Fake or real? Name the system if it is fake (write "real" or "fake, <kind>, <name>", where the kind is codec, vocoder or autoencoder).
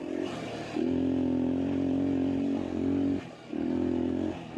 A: real